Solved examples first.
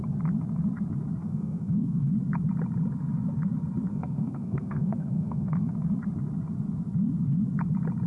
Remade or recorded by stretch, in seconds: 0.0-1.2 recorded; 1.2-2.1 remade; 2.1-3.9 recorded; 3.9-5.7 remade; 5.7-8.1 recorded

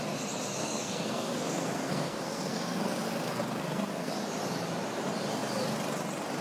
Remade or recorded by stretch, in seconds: 0.0-0.6 recorded; 0.6-4.1 remade; 4.1-6.4 recorded

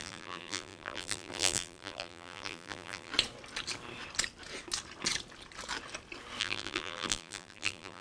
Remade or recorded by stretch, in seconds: 0.0-3.1 remade; 3.1-6.4 recorded; 6.4-8.0 remade

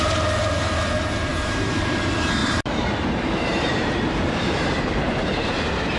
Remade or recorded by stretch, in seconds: 0.0-1.3 recorded; 1.3-2.0 remade; 2.0-2.4 recorded; 2.4-5.6 remade; 5.6-6.0 recorded

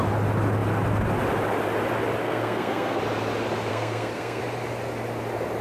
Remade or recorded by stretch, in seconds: 0.0-2.2 recorded; 2.2-3.0 remade; 3.0-3.7 recorded; 3.7-4.4 remade; 4.4-5.6 recorded

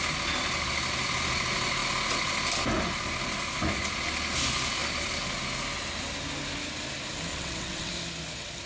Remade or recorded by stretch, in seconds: 0.0-7.3 recorded; 7.3-7.9 remade; 7.9-8.7 recorded

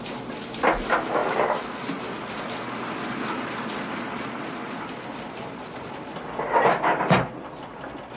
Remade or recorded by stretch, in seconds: 0.0-8.2 recorded

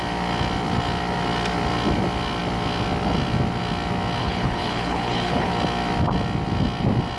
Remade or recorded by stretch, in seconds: 0.0-4.2 recorded; 4.2-5.5 remade; 5.5-7.2 recorded